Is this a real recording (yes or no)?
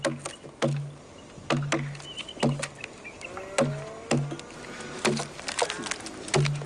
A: yes